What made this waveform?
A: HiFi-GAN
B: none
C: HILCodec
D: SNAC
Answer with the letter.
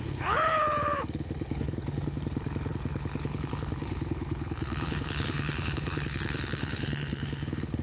C